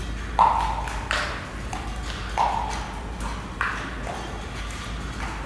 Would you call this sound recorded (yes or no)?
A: yes